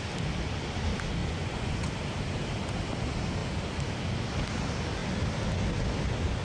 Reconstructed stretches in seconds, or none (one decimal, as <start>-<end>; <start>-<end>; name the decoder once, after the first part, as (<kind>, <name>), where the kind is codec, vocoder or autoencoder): 1.2-1.9 (vocoder, Vocos)